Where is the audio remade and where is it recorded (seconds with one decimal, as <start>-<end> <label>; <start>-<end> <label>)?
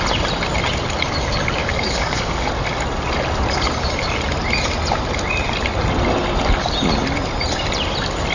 0.0-1.6 recorded; 1.6-2.5 remade; 2.5-8.3 recorded